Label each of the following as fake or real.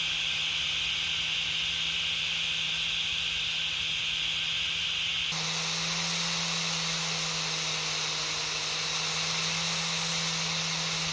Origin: real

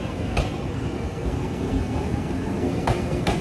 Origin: fake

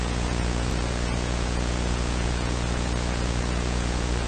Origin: fake